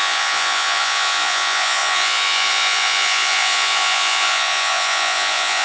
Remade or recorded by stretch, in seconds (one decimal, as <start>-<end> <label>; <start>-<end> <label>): 0.0-5.6 remade